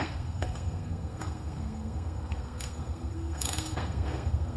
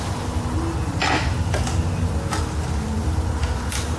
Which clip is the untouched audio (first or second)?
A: second